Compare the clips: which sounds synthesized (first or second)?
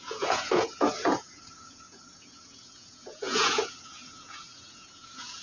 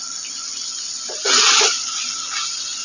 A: first